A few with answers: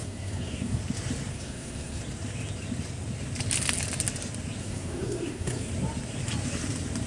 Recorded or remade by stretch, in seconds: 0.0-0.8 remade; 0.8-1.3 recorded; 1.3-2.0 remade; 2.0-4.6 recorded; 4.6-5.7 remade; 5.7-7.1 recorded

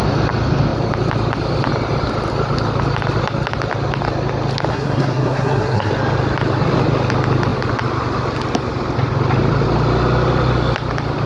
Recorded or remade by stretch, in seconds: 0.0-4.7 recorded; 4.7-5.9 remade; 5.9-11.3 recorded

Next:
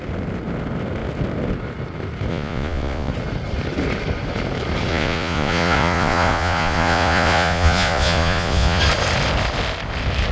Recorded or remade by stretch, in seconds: 0.0-2.3 recorded; 2.3-3.1 remade; 3.1-4.9 recorded; 4.9-8.8 remade; 8.8-10.3 recorded

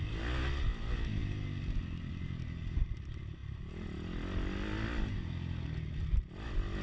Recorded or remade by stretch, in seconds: 0.0-6.8 recorded

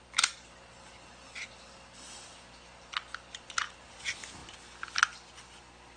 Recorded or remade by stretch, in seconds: 0.0-6.0 recorded

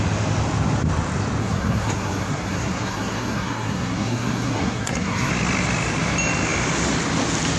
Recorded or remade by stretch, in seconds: 0.0-1.4 recorded; 1.4-5.3 remade; 5.3-7.6 recorded

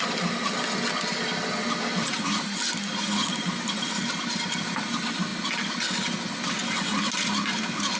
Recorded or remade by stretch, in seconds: 0.0-8.0 recorded